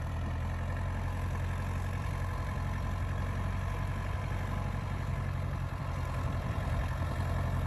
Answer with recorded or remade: remade